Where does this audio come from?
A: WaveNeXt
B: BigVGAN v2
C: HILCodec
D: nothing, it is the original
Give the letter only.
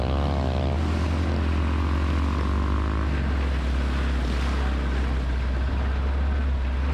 D